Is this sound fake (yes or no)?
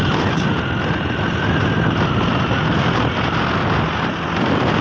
no